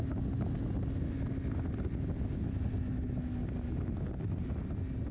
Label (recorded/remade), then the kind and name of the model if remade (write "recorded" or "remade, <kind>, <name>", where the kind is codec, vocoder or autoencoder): recorded